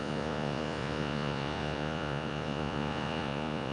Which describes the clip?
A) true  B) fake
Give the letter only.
B